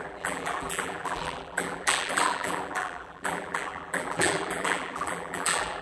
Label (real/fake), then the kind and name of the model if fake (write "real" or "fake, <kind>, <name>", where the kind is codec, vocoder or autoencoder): fake, vocoder, BigVGAN v2